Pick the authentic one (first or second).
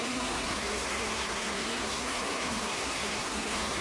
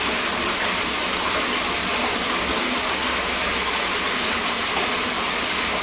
second